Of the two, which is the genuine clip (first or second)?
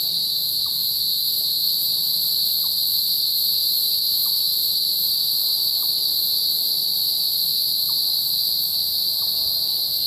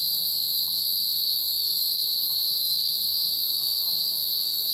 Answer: first